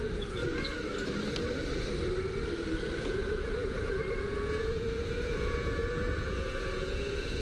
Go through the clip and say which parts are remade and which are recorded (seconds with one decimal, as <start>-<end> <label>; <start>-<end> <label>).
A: 0.0-0.4 remade; 0.4-3.0 recorded; 3.0-7.4 remade